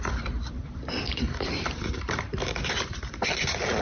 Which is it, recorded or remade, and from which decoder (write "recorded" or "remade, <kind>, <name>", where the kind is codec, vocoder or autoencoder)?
remade, vocoder, BigVGAN v2